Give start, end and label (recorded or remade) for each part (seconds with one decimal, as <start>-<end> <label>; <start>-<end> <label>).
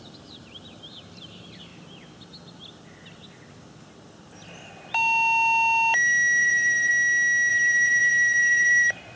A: 0.0-1.7 remade; 1.7-6.4 recorded; 6.4-6.9 remade; 6.9-7.5 recorded; 7.5-9.2 remade